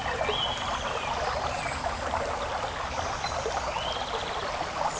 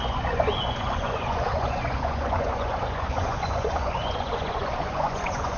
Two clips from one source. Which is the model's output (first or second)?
second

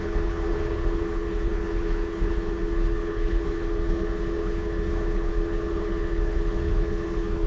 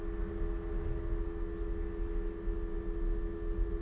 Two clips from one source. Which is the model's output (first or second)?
first